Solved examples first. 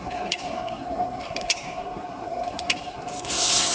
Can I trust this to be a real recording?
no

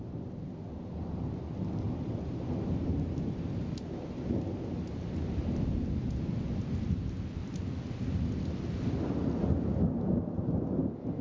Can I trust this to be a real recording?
yes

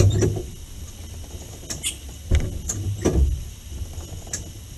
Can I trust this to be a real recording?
yes